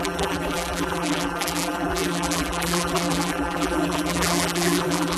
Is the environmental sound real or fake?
fake